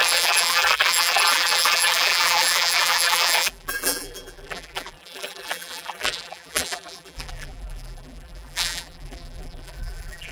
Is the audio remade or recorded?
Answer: remade